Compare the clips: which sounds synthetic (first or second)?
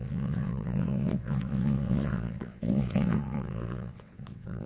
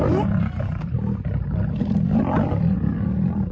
first